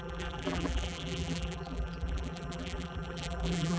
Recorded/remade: remade